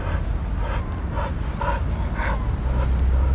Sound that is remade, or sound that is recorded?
recorded